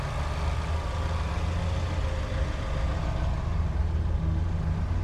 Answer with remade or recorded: recorded